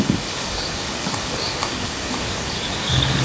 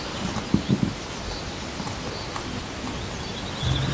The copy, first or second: first